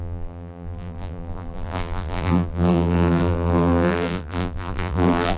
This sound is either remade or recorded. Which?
remade